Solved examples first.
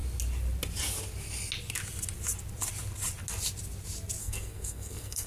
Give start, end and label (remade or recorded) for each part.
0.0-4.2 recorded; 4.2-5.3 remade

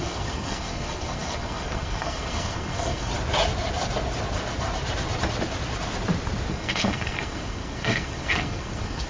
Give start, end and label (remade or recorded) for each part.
0.0-3.1 remade; 3.1-6.5 recorded; 6.5-9.1 remade

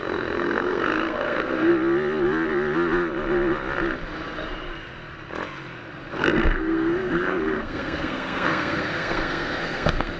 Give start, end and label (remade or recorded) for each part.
0.0-1.7 remade; 1.7-6.1 recorded; 6.1-10.2 remade

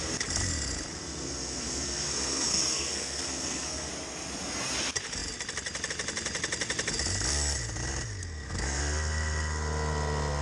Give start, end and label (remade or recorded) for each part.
0.0-1.0 recorded; 1.0-3.9 remade; 3.9-8.2 recorded; 8.2-8.8 remade; 8.8-10.4 recorded

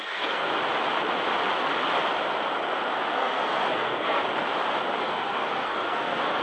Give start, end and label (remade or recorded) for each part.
0.0-0.5 remade; 0.5-2.9 recorded; 2.9-4.2 remade; 4.2-5.0 recorded; 5.0-6.4 remade

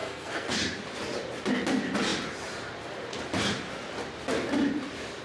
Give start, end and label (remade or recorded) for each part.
0.0-0.5 remade; 0.5-5.2 recorded

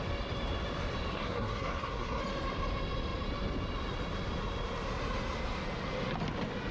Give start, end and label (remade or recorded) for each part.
0.0-1.1 recorded; 1.1-2.2 remade; 2.2-6.7 recorded